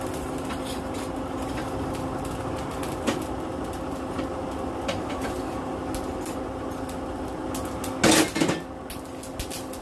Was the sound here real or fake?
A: real